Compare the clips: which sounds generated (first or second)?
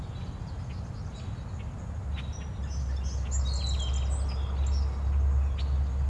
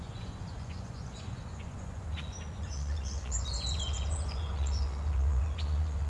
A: second